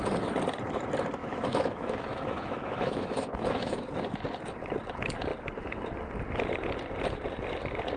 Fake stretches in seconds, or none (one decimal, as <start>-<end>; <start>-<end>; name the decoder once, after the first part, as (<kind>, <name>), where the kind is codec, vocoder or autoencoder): 1.2-3.9 (autoencoder, DAC-VAE)